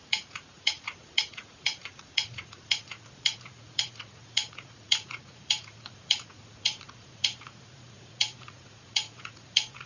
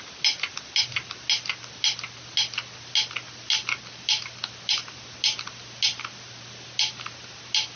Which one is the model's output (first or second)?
first